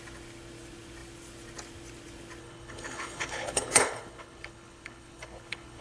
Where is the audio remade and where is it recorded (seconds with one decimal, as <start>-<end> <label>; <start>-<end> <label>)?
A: 0.0-2.4 recorded; 2.4-5.8 remade